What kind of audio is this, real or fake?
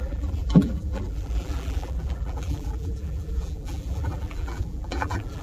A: fake